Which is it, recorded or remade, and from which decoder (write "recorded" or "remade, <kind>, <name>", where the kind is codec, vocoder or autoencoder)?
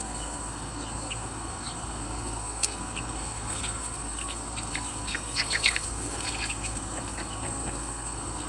remade, codec, SNAC